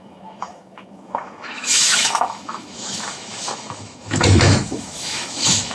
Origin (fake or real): fake